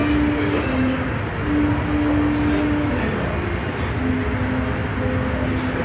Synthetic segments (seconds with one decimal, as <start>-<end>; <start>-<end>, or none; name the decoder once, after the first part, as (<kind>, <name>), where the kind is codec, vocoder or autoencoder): none